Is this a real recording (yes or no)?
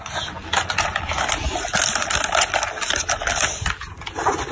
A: yes